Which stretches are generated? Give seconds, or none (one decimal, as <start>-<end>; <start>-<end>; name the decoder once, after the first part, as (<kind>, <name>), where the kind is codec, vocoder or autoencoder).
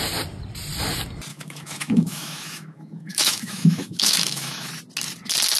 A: 1.3-4.7 (autoencoder, DAC-VAE)